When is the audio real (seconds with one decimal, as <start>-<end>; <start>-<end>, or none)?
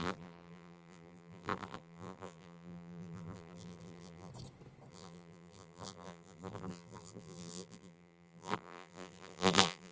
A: 4.3-4.9